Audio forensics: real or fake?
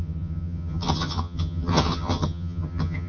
fake